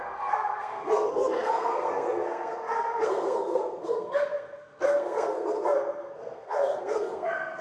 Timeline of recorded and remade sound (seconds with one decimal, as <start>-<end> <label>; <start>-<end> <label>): 0.0-7.6 remade

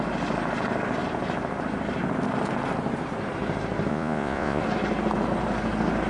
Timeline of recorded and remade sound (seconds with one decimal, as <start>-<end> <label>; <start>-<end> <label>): 0.0-3.9 recorded; 3.9-4.6 remade; 4.6-6.1 recorded

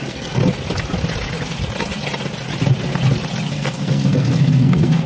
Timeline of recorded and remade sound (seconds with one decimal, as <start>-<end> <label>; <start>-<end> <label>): 0.0-0.4 remade; 0.4-3.5 recorded; 3.5-5.1 remade

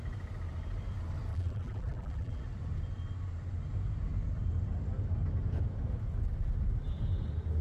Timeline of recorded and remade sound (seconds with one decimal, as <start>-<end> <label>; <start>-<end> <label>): 0.0-1.3 recorded; 1.3-2.4 remade; 2.4-7.6 recorded

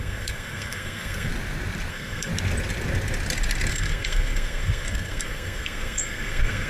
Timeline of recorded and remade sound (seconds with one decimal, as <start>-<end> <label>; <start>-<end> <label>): 0.0-1.3 remade; 1.3-1.9 recorded; 1.9-2.3 remade; 2.3-3.7 recorded; 3.7-6.7 remade